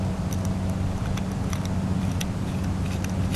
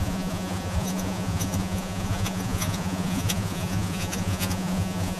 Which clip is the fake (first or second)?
second